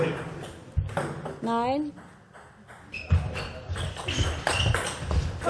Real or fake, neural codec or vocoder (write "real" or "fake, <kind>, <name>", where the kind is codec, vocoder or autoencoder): real